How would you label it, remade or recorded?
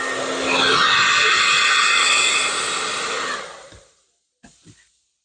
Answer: recorded